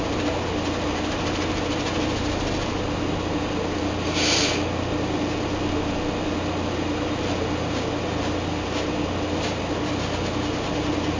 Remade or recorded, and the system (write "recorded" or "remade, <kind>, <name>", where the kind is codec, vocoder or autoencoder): recorded